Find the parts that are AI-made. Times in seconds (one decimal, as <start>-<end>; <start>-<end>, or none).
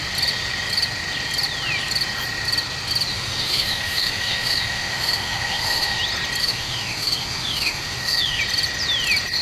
3.1-6.0; 6.4-8.4